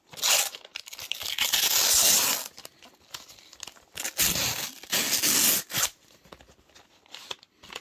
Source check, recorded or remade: recorded